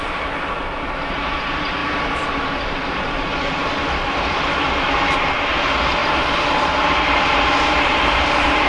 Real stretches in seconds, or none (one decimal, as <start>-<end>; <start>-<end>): none